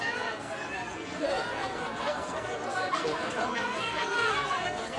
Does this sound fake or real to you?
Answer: fake